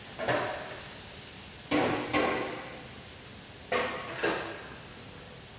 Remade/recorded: recorded